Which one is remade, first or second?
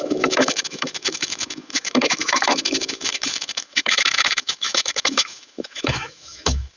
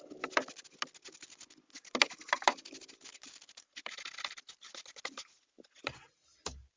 first